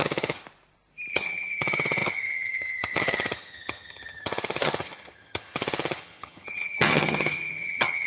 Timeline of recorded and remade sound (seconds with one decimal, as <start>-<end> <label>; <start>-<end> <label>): 0.0-0.4 remade; 0.4-1.1 recorded; 1.1-8.1 remade